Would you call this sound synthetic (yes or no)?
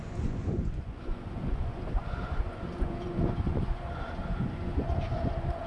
yes